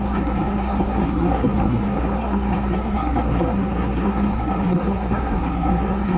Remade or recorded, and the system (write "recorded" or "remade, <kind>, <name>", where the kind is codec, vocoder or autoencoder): remade, codec, SNAC